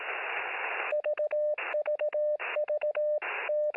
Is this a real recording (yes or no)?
yes